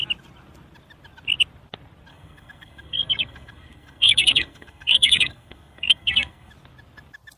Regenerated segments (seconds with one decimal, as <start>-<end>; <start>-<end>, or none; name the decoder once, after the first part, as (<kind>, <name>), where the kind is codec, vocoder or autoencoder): 2.1-6.5 (codec, SNAC)